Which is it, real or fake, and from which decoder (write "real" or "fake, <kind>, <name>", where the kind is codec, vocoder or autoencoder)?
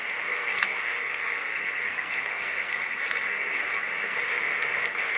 fake, codec, SNAC